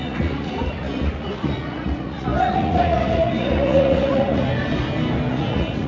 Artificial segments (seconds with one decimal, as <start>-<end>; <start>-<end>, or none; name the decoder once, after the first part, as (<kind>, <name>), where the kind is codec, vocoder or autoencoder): 0.0-4.5 (vocoder, Vocos); 5.3-5.9